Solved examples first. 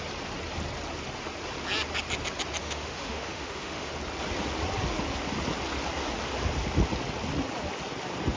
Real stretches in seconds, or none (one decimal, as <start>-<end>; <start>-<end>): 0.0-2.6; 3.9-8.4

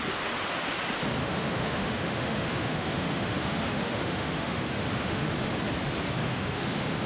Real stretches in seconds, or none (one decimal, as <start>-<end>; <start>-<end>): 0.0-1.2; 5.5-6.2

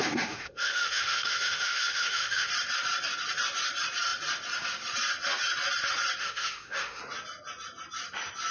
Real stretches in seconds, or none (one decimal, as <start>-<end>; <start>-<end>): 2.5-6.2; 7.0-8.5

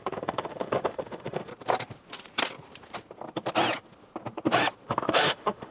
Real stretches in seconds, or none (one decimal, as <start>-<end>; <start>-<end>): 1.5-4.9